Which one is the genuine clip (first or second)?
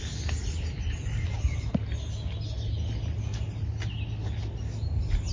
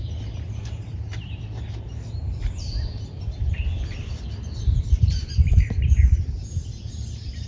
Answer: first